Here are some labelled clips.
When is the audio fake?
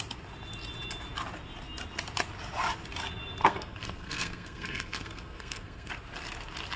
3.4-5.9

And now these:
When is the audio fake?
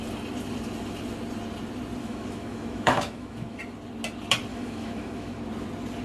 2.0-3.6; 4.5-5.4